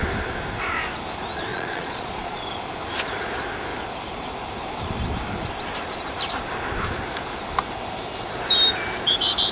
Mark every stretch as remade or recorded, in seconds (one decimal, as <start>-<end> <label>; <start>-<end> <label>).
0.0-1.5 recorded; 1.5-2.4 remade; 2.4-9.5 recorded